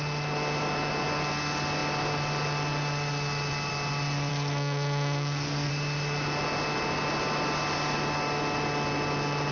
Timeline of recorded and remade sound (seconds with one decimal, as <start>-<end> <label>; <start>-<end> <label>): 0.0-4.3 recorded; 4.3-5.7 remade; 5.7-9.5 recorded